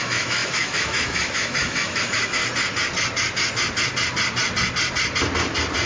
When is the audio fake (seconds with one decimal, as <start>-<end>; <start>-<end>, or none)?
0.0-2.4